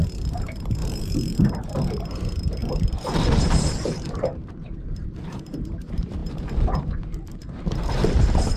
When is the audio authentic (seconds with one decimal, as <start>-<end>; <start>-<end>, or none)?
none